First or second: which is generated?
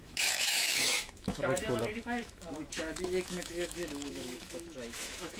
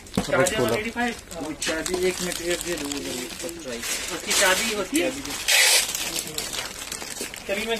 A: first